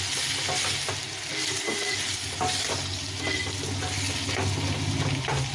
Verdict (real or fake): real